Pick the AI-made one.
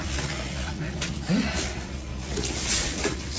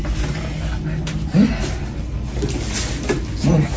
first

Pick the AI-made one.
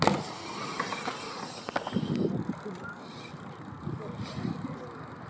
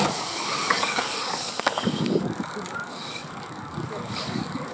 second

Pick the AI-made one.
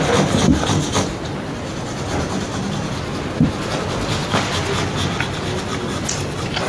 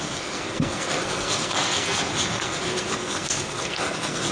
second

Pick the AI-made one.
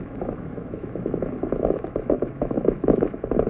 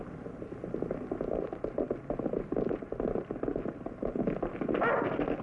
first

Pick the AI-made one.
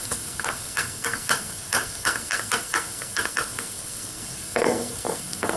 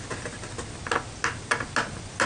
first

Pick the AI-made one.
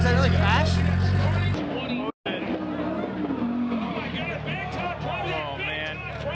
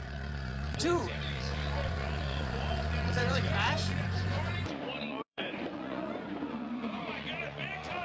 second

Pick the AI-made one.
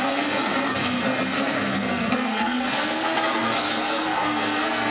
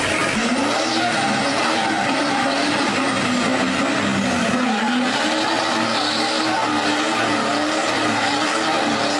first